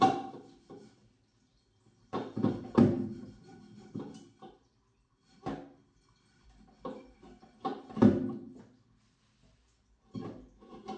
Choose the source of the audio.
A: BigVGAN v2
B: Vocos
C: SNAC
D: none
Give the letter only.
A